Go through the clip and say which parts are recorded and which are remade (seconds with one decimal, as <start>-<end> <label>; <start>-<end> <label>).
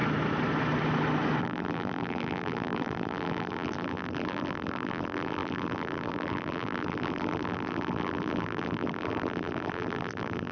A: 0.0-1.4 recorded; 1.4-10.5 remade